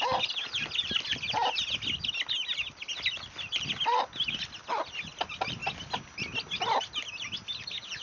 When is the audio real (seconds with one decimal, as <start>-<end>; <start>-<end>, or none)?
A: 0.0-8.0